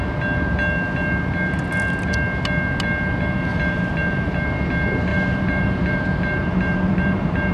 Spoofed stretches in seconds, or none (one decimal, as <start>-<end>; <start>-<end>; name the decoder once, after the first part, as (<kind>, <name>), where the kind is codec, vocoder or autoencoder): 3.5-4.4 (vocoder, BigVGAN v2); 5.1-7.5

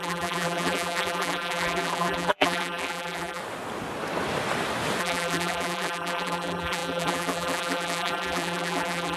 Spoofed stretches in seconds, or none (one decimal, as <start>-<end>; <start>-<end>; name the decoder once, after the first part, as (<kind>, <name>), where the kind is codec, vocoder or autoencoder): 0.0-3.4 (vocoder, BigVGAN v2); 5.0-9.2

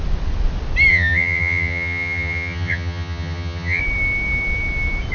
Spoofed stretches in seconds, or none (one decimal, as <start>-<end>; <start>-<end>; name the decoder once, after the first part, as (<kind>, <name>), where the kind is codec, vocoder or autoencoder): 0.9-3.8 (vocoder, HiFi-GAN)

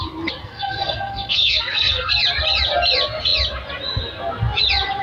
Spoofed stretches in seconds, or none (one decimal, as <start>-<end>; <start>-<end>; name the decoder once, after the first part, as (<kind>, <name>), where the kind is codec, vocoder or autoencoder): 0.4-2.1 (codec, SNAC)